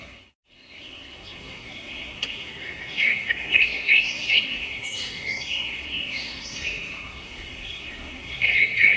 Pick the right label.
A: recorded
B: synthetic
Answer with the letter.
B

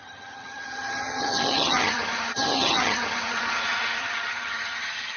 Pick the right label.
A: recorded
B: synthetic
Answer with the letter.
B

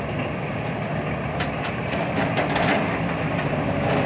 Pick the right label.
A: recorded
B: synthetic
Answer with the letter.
A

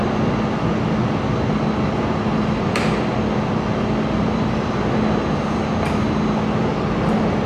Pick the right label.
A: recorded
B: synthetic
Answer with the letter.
A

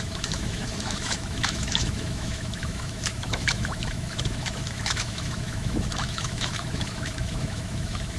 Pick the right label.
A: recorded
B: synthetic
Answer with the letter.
B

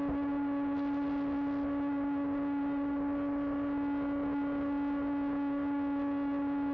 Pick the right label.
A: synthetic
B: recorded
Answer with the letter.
B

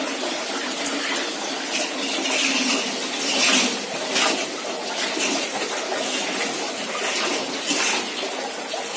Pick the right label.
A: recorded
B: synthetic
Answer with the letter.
A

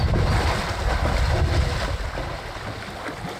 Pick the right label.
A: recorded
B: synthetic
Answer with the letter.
A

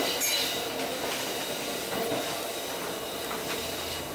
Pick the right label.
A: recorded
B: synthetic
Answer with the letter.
A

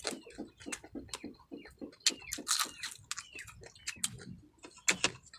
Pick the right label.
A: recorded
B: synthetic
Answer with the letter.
A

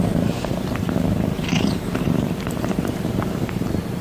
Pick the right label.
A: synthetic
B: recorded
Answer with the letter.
A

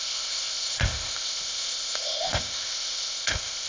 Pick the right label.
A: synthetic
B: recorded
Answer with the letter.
A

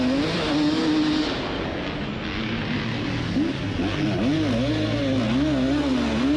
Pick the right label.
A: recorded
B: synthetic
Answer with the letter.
A